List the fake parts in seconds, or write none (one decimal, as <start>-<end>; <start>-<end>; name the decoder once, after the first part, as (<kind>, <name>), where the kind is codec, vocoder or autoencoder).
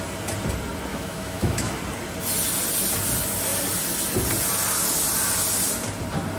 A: 0.9-1.8 (autoencoder, DAC-VAE)